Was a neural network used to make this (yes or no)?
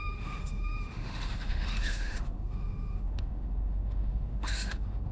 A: yes